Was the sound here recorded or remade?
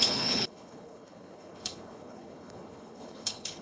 remade